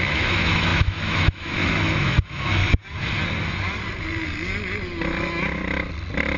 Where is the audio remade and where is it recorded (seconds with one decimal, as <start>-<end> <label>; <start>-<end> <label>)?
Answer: 0.0-2.6 remade; 2.6-6.4 recorded